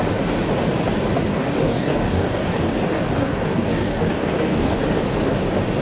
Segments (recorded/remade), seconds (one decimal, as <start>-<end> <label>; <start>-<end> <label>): 0.0-1.3 recorded; 1.3-4.8 remade; 4.8-5.8 recorded